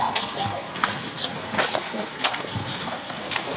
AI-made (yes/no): yes